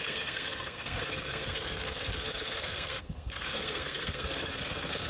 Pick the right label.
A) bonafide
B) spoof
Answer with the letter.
B